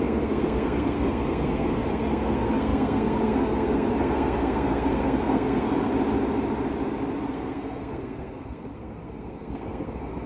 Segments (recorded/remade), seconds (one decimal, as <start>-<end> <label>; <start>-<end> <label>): 0.0-5.9 remade; 5.9-7.3 recorded; 7.3-10.3 remade